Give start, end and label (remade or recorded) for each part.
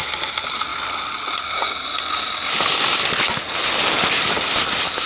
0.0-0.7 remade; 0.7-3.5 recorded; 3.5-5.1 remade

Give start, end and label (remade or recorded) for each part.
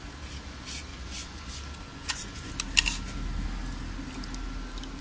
0.0-0.9 recorded; 0.9-1.5 remade; 1.5-1.9 recorded; 1.9-2.5 remade; 2.5-5.0 recorded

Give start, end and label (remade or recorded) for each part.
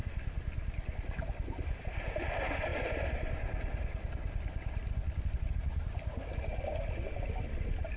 0.0-8.0 recorded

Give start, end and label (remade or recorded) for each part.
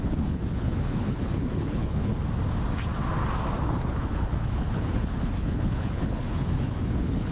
0.0-2.1 remade; 2.1-3.6 recorded; 3.6-7.3 remade